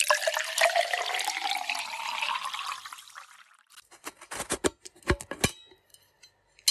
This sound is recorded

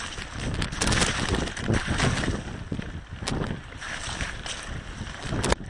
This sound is recorded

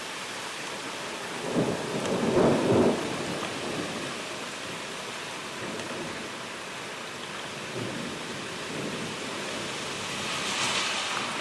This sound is recorded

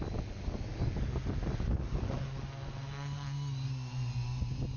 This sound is recorded